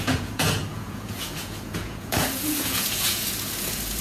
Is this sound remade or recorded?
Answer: remade